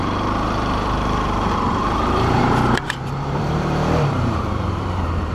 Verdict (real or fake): fake